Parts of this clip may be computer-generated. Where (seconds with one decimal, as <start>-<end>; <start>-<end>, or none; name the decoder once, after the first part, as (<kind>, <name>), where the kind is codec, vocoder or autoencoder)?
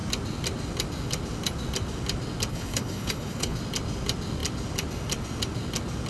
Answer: 2.5-3.6 (codec, HILCodec)